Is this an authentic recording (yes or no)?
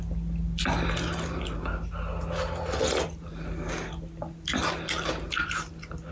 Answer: yes